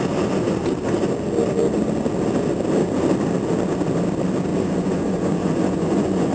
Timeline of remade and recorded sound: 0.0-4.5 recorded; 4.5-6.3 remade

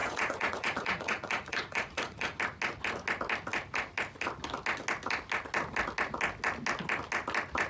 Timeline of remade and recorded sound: 0.0-2.4 remade; 2.4-7.7 recorded

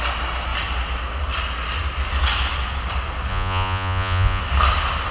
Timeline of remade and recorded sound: 0.0-3.3 recorded; 3.3-4.4 remade; 4.4-5.1 recorded

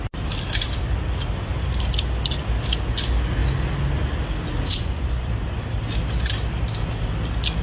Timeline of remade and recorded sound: 0.0-4.7 recorded; 4.7-5.3 remade; 5.3-7.6 recorded

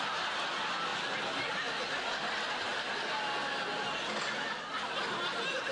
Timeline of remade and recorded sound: 0.0-5.7 recorded